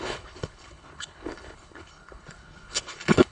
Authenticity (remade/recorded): remade